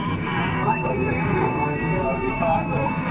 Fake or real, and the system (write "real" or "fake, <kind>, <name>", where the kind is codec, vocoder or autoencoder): fake, codec, SNAC